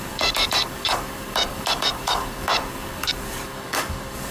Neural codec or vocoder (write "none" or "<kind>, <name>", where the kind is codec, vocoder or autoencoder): codec, DAC